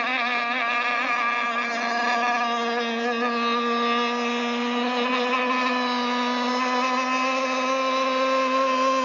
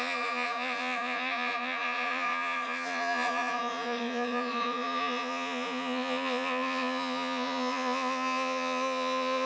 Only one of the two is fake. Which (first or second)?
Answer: second